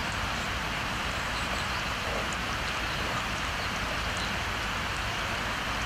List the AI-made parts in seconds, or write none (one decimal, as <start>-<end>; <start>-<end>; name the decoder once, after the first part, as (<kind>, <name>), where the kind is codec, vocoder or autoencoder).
0.0-3.5 (vocoder, BigVGAN v2)